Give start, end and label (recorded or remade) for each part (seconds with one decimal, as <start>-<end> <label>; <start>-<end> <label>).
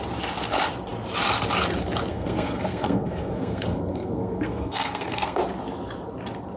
0.0-2.1 recorded; 2.1-5.4 remade; 5.4-6.6 recorded